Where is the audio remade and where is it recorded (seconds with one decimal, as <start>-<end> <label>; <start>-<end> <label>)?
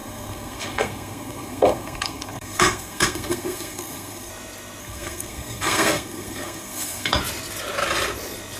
0.0-4.3 remade; 4.3-4.8 recorded; 4.8-7.2 remade; 7.2-8.6 recorded